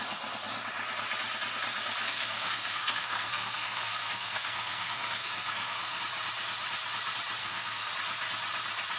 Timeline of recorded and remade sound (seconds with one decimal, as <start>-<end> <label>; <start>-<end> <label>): 0.0-2.0 recorded; 2.0-6.0 remade; 6.0-7.4 recorded; 7.4-7.9 remade; 7.9-9.0 recorded